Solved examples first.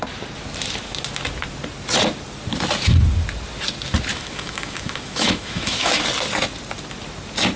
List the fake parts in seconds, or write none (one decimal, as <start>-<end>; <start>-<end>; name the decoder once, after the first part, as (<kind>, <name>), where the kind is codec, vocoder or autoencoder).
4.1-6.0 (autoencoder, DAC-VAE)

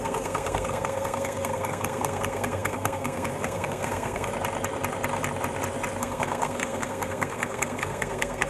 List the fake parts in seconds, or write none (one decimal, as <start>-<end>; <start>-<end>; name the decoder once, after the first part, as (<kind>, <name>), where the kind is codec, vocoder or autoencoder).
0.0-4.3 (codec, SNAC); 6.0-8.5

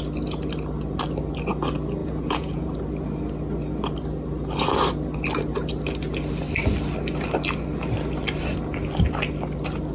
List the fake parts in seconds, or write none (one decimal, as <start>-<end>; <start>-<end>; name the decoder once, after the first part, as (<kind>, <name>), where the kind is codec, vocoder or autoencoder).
2.0-2.8 (vocoder, Vocos)